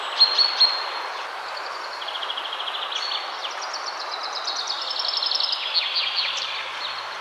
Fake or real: real